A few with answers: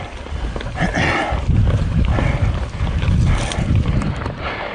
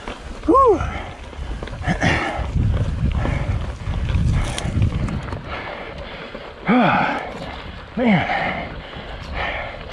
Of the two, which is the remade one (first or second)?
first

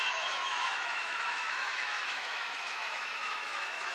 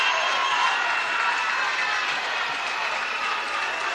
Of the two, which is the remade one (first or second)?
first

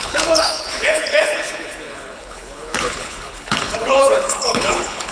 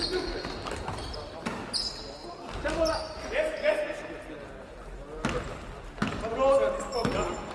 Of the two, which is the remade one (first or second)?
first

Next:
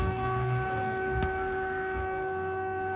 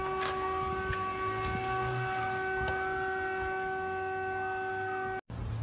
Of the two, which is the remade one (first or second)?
first